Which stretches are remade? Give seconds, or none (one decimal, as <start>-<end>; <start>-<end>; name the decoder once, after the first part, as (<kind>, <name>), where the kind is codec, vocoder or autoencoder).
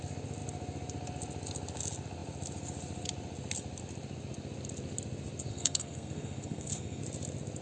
5.5-7.0 (codec, SNAC)